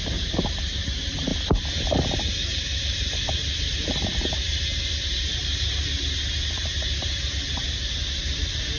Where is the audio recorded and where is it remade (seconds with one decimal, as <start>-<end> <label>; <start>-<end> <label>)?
0.0-1.3 remade; 1.3-2.2 recorded; 2.2-8.8 remade